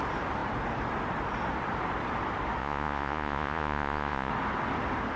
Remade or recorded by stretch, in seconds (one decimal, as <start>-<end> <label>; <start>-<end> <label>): 0.0-2.6 recorded; 2.6-4.3 remade; 4.3-5.2 recorded